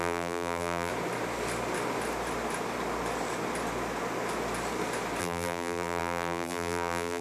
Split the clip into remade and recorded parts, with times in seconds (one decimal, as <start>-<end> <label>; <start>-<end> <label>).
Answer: 0.0-0.9 remade; 0.9-5.2 recorded; 5.2-7.2 remade